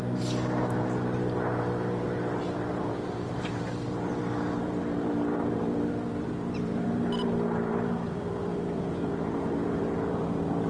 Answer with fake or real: fake